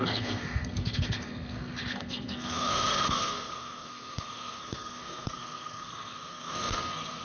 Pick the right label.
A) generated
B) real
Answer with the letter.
A